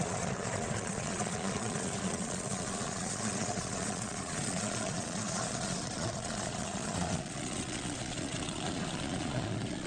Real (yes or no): no